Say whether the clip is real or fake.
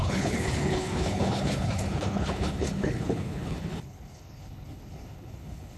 fake